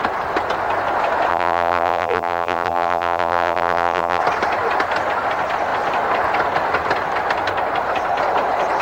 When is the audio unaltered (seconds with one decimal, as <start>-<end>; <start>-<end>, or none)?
0.0-1.3; 4.2-8.8